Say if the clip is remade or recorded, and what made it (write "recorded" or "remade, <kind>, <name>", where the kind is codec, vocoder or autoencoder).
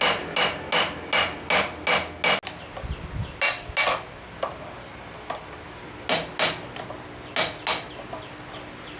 recorded